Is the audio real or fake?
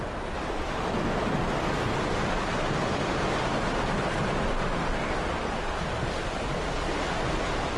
real